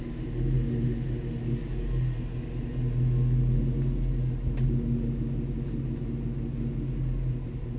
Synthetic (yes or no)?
no